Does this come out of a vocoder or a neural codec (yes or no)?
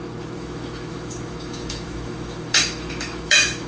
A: yes